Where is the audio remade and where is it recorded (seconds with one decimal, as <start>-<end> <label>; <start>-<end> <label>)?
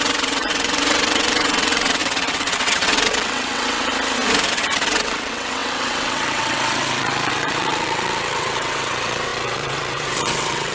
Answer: 0.0-3.9 remade; 3.9-4.5 recorded; 4.5-10.7 remade